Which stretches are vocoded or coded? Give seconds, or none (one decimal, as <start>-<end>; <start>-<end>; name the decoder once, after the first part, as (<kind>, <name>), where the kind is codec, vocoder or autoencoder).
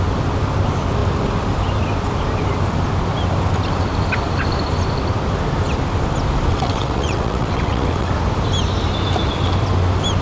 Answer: 6.5-8.1 (vocoder, WaveNeXt)